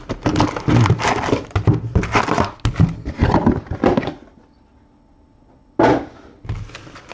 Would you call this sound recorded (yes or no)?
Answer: yes